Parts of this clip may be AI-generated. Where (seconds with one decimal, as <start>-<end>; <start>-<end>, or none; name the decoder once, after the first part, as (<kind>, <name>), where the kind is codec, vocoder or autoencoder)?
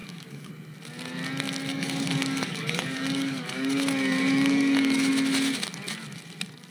0.0-0.5 (codec, DAC); 1.7-5.1